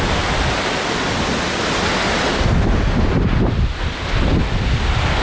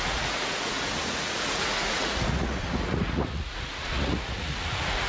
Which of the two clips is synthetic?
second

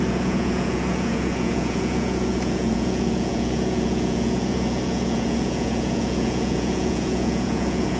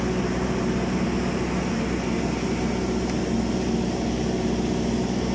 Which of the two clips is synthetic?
first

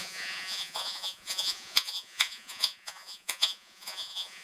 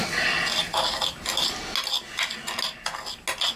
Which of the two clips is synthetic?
first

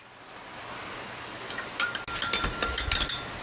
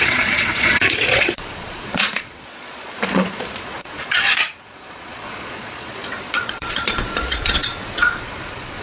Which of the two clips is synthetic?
second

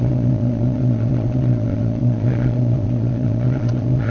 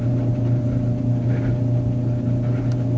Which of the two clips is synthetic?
first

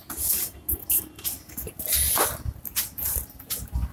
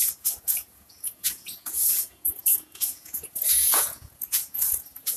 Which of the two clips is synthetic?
second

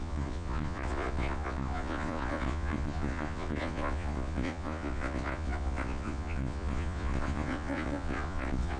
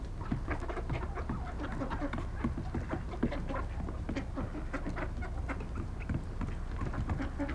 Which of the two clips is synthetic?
first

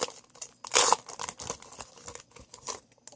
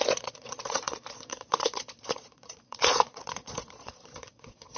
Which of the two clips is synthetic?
second